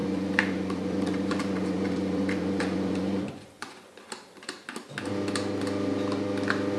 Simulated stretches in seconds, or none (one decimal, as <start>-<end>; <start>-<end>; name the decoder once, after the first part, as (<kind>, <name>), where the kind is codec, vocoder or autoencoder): 0.0-4.1 (vocoder, Vocos)